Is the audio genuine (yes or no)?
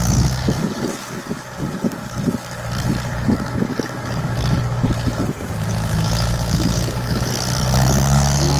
no